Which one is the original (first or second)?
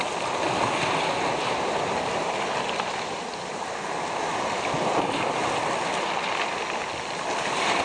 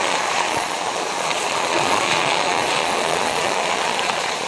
first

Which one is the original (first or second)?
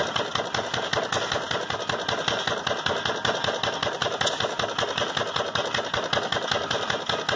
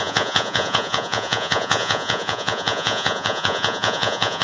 first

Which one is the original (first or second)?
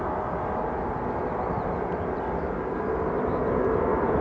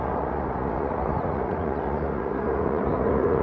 first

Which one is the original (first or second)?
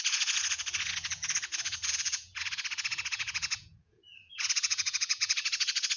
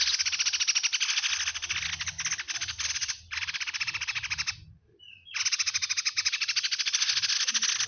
second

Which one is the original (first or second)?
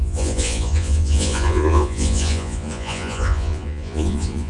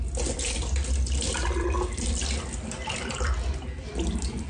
second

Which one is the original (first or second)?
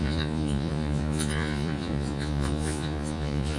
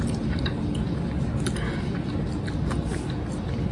second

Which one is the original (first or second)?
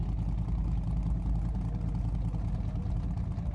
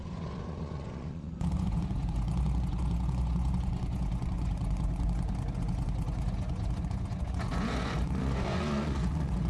first